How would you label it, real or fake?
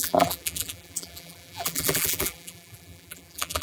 fake